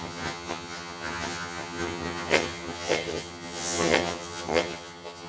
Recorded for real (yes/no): no